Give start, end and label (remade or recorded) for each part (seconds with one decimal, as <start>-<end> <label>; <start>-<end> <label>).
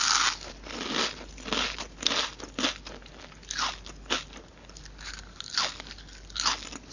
0.0-6.9 recorded